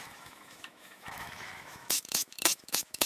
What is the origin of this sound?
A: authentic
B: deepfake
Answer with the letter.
B